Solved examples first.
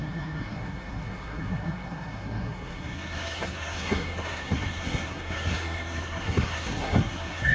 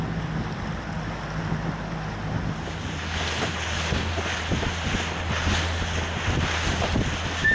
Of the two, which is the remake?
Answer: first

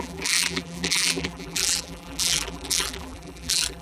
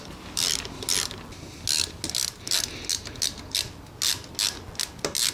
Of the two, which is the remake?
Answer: first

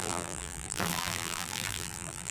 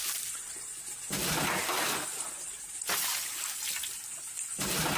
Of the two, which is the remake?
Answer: first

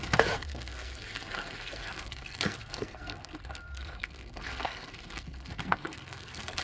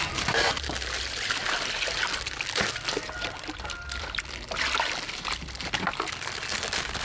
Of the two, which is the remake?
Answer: first